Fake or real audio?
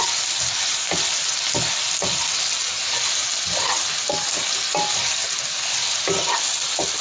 real